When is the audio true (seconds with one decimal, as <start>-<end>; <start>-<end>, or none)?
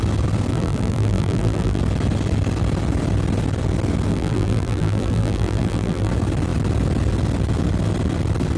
0.0-0.5; 1.8-4.1; 6.1-8.6